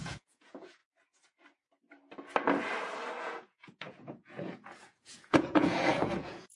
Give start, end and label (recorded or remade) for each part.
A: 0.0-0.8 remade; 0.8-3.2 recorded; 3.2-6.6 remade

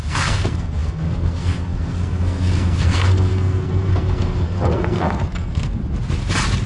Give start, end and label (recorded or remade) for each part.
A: 0.0-5.8 remade; 5.8-6.7 recorded